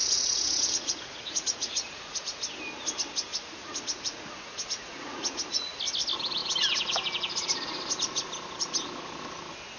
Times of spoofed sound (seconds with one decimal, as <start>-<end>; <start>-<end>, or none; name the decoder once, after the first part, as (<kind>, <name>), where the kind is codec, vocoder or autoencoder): 0.0-2.4 (vocoder, Vocos); 3.3-5.8